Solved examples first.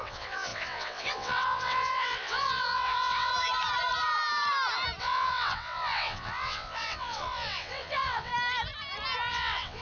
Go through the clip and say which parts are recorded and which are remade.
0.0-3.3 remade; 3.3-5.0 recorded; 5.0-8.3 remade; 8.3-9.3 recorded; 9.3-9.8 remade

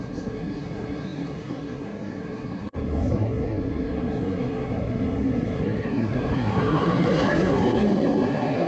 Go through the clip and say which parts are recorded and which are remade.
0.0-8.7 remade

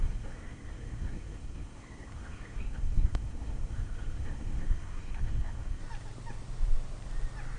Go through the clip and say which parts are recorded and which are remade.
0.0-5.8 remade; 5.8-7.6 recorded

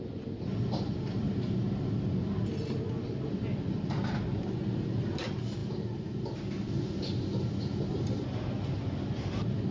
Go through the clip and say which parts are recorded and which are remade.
0.0-9.7 recorded

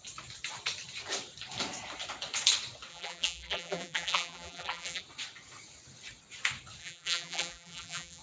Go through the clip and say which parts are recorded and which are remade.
0.0-2.9 recorded; 2.9-5.0 remade; 5.0-6.8 recorded; 6.8-8.2 remade

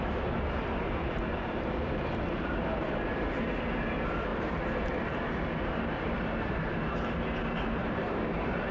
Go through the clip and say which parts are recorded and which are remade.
0.0-1.3 recorded; 1.3-3.3 remade; 3.3-4.3 recorded; 4.3-7.2 remade; 7.2-7.8 recorded; 7.8-8.7 remade